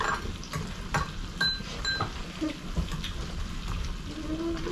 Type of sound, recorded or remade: recorded